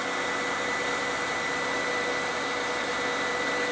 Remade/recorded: recorded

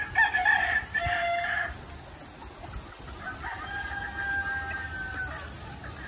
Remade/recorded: recorded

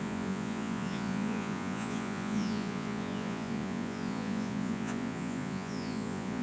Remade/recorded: remade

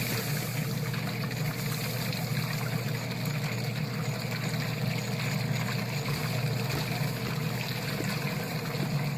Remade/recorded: recorded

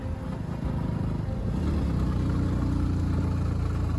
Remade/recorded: recorded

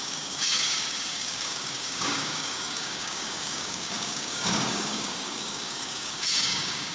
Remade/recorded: remade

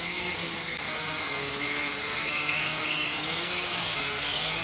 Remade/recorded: remade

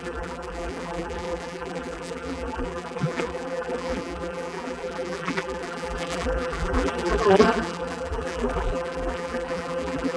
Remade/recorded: remade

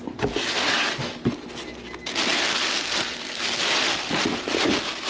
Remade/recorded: recorded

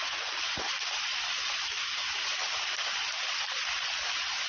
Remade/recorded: remade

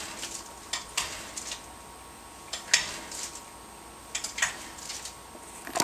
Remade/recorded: recorded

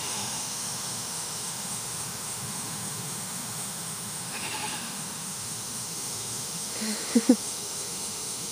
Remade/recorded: remade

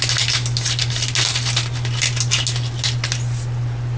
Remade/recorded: recorded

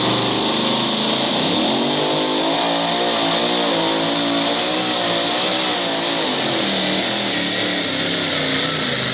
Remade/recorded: recorded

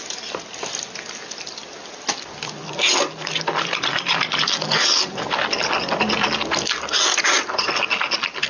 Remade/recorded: recorded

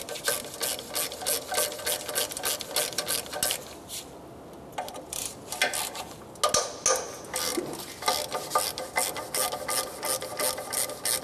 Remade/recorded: recorded